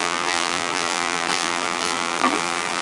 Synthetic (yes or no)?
yes